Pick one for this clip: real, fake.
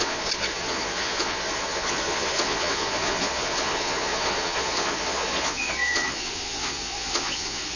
fake